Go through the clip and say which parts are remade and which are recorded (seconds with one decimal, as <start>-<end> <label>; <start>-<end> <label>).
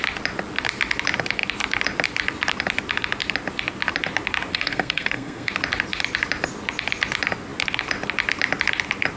0.0-4.5 recorded; 4.5-5.5 remade; 5.5-9.2 recorded